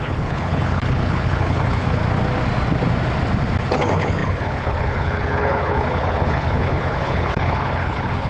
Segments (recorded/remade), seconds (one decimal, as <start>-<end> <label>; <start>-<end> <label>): 0.0-2.0 remade; 2.0-3.6 recorded; 3.6-8.3 remade